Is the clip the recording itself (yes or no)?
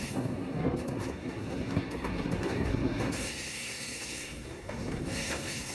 no